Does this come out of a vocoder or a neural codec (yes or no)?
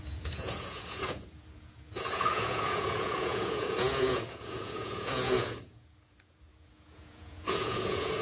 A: yes